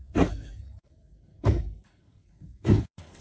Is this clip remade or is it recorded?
remade